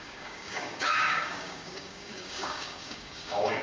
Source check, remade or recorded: remade